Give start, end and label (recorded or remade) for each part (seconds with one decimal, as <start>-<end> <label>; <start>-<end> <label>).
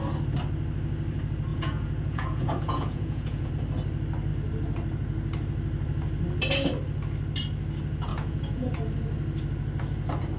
0.0-1.5 recorded; 1.5-3.5 remade; 3.5-8.1 recorded; 8.1-8.7 remade; 8.7-10.4 recorded